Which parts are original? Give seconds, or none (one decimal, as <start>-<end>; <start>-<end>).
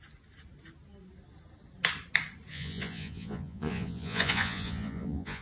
0.0-2.5